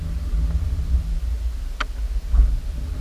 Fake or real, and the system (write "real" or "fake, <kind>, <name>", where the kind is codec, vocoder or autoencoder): real